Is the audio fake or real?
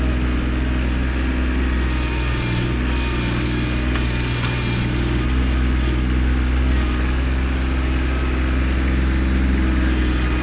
real